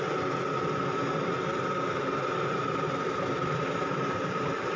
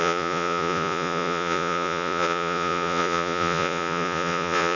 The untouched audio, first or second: first